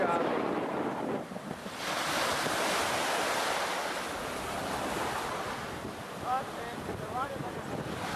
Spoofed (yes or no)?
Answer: no